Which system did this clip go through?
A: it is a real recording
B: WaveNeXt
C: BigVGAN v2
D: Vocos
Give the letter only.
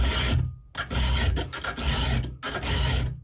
A